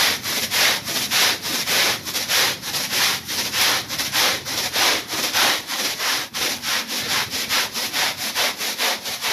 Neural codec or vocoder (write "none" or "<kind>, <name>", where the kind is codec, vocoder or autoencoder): vocoder, BigVGAN v2